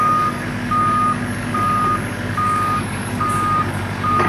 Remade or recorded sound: remade